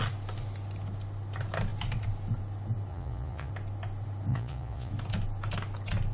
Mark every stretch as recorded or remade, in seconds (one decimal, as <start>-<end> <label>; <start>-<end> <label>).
0.0-2.9 recorded; 2.9-3.5 remade; 3.5-4.3 recorded; 4.3-4.9 remade; 4.9-6.1 recorded